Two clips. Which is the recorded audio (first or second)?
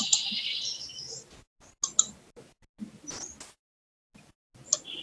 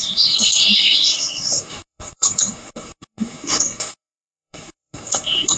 first